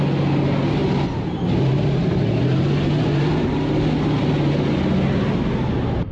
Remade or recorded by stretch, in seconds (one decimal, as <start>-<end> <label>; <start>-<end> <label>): 0.0-6.1 recorded